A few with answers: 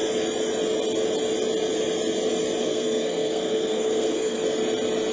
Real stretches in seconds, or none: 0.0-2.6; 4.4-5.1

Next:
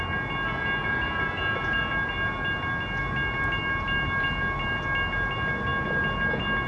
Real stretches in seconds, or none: 0.0-6.7

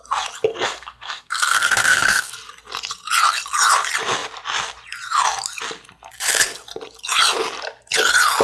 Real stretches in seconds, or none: 0.0-0.5; 2.3-8.4